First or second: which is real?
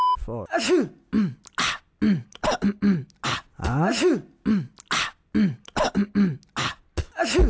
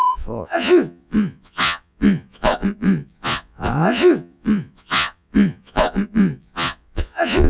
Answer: first